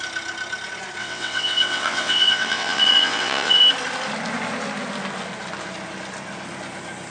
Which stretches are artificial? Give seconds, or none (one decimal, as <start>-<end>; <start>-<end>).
1.0-3.6